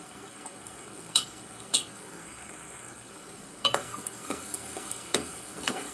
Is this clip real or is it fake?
fake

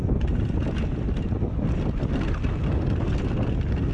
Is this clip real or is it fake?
real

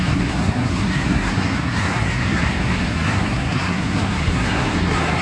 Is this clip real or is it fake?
fake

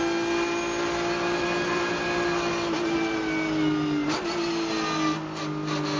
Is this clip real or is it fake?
real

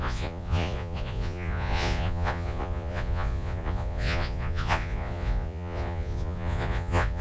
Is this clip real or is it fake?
fake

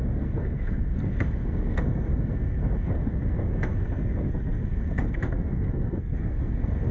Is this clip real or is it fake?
fake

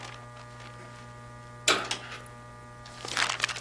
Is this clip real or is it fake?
real